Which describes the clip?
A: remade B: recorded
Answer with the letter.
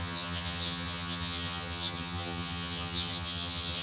A